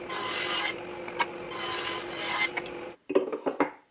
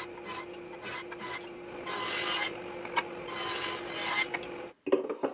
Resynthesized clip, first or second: first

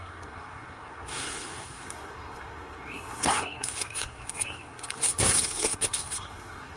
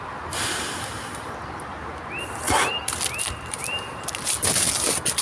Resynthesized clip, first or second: first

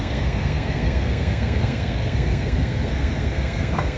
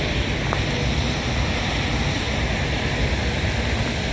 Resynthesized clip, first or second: first